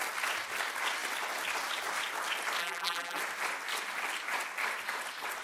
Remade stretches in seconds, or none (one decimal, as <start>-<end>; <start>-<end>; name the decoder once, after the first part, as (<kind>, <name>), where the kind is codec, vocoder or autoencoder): 2.6-3.2 (vocoder, BigVGAN v2)